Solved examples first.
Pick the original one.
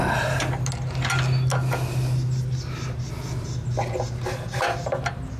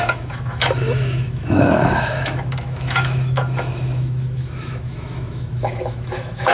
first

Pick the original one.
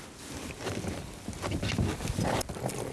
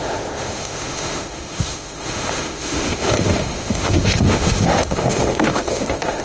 first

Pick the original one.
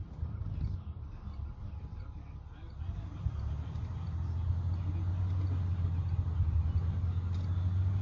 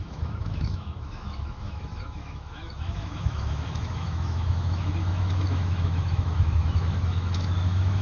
first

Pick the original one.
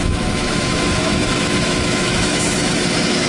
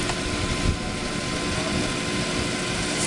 second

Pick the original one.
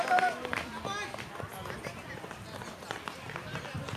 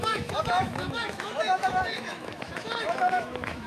first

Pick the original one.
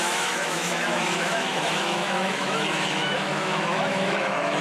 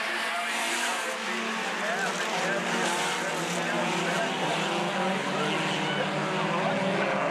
second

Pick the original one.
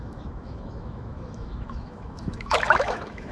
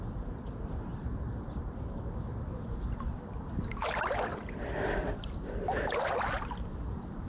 second